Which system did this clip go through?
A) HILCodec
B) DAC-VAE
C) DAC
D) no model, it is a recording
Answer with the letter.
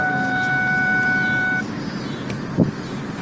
D